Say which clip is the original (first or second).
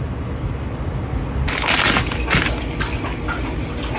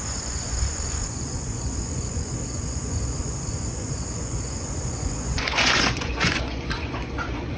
first